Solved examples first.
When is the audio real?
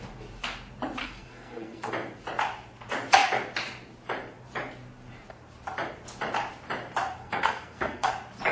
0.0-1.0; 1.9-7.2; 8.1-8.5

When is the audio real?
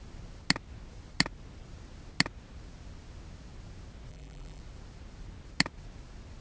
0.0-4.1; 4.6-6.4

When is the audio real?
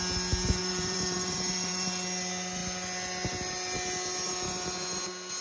0.0-0.6; 1.9-5.4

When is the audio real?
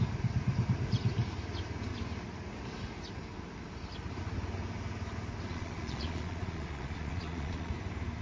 0.0-5.5; 7.7-8.2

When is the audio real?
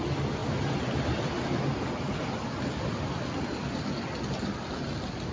0.0-5.3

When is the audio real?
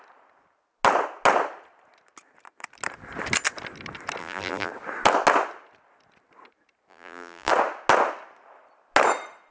0.0-4.2; 4.7-6.9; 7.5-9.5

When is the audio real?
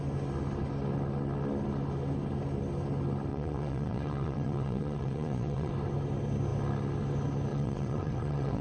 0.0-3.3; 5.7-7.5